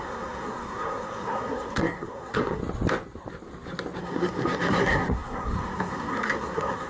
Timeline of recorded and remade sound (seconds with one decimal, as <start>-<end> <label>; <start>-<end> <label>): 0.0-2.6 remade; 2.6-4.0 recorded; 4.0-6.9 remade